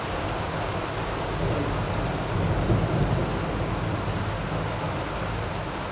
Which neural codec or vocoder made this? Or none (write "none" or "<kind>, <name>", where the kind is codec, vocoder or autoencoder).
none